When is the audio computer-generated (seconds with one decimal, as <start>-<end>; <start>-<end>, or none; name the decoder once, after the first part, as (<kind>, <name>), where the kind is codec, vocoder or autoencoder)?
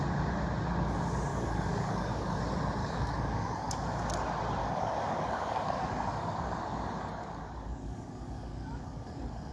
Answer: 1.3-2.4 (codec, DAC); 2.8-3.7; 4.6-9.5